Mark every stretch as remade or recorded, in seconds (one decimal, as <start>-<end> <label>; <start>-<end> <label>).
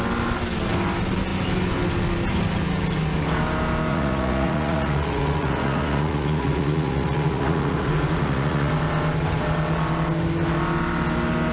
0.0-3.9 recorded; 3.9-8.7 remade; 8.7-11.5 recorded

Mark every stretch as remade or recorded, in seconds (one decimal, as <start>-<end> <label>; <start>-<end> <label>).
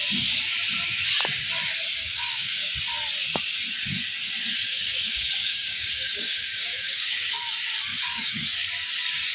0.0-2.0 recorded; 2.0-2.7 remade; 2.7-4.7 recorded; 4.7-7.3 remade; 7.3-7.9 recorded; 7.9-8.4 remade; 8.4-9.3 recorded